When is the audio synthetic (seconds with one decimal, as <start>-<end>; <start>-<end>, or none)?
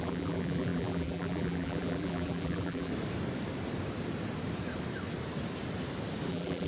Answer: 0.0-2.9; 6.3-6.7